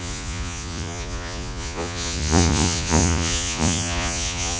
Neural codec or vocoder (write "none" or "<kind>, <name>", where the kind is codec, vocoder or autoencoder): vocoder, Vocos